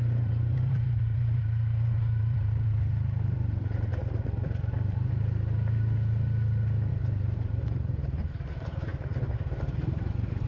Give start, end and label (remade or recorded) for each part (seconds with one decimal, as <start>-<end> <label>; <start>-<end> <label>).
0.0-3.9 remade; 3.9-6.9 recorded; 6.9-10.5 remade